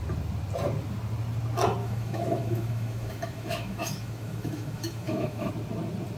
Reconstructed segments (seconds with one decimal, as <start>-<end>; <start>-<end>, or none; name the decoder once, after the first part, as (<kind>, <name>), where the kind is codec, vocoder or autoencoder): 1.8-5.5 (autoencoder, DAC-VAE)